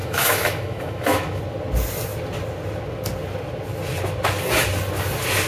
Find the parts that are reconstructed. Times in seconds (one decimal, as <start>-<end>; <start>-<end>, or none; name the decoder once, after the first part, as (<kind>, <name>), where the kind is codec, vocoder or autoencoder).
0.0-1.4 (autoencoder, DAC-VAE)